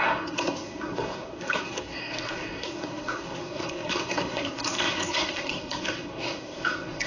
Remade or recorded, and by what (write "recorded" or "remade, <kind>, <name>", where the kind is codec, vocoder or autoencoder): remade, codec, SNAC